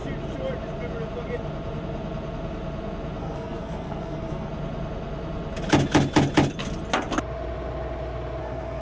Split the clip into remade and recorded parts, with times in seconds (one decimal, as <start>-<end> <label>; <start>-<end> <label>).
0.0-3.2 recorded; 3.2-4.5 remade; 4.5-8.4 recorded; 8.4-8.8 remade